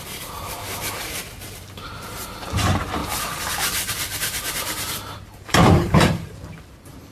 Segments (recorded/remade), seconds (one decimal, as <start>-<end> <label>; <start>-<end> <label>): 0.0-3.0 remade; 3.0-3.9 recorded; 3.9-7.1 remade